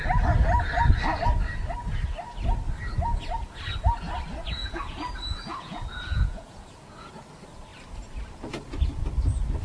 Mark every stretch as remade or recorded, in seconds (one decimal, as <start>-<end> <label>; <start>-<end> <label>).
0.0-4.6 recorded; 4.6-7.1 remade; 7.1-9.6 recorded